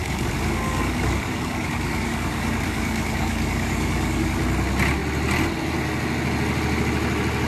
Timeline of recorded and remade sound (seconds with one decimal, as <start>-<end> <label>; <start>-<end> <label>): 0.0-4.4 remade; 4.4-7.5 recorded